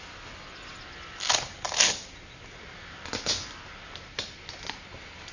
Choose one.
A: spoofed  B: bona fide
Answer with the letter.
B